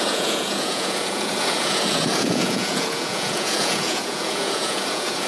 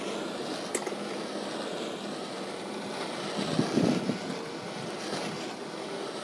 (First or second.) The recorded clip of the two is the second